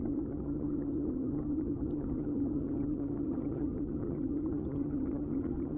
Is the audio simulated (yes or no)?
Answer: yes